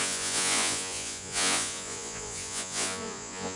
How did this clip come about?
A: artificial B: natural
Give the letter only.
A